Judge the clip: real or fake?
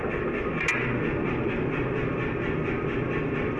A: real